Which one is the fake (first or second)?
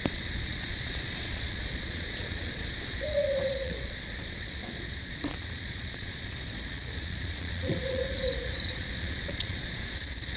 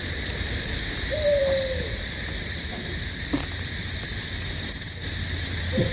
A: first